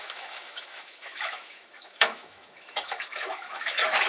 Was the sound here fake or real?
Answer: fake